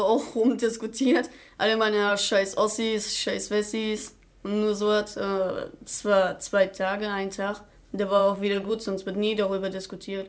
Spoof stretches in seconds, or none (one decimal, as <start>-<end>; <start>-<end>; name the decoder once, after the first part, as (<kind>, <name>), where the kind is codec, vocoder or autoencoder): 8.2-8.7 (vocoder, WaveNeXt)